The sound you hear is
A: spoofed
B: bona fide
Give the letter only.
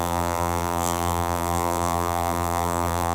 A